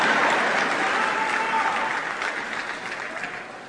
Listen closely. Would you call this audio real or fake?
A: real